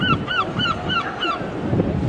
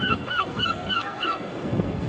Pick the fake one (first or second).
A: second